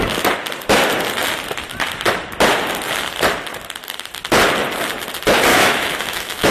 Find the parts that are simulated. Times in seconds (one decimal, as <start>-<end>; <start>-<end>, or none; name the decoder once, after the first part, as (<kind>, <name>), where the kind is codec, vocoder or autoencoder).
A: 5.5-6.5 (autoencoder, DAC-VAE)